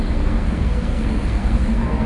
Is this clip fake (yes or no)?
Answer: yes